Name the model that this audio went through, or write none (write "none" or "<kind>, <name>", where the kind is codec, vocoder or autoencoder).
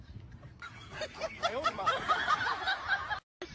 none